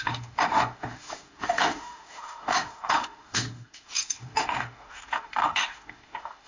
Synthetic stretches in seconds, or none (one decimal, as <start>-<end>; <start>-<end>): 0.0-6.5